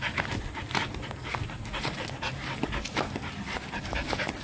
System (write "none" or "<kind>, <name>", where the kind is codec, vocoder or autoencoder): none